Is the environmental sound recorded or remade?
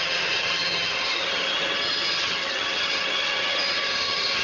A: remade